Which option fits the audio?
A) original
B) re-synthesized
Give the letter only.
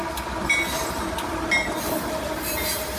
A